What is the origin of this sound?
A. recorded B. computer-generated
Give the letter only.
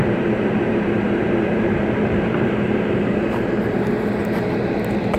B